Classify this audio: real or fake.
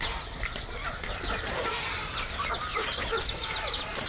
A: real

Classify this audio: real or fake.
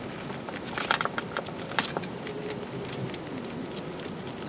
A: real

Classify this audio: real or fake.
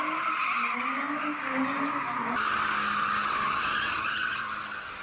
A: real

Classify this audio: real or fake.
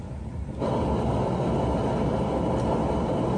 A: real